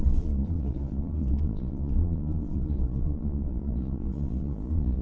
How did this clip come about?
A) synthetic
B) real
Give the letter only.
A